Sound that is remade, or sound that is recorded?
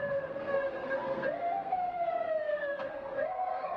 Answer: remade